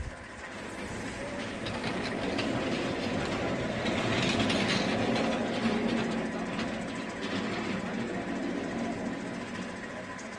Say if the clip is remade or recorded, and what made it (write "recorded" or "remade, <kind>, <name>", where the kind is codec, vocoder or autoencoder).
recorded